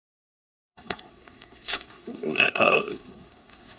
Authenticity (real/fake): fake